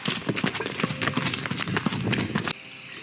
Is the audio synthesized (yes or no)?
no